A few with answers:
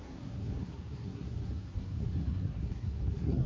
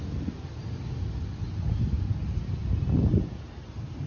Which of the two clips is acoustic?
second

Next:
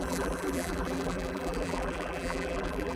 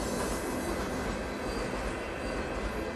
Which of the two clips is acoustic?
second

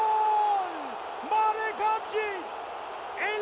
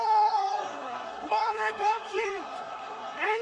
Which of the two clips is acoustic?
first